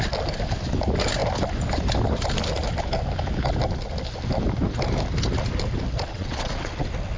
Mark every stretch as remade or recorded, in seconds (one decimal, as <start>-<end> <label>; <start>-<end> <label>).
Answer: 0.0-6.1 recorded; 6.1-6.7 remade; 6.7-7.2 recorded